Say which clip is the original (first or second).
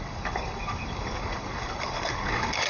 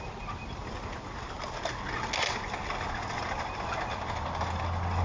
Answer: second